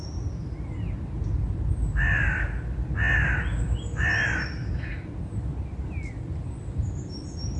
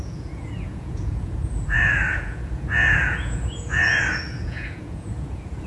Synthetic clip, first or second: second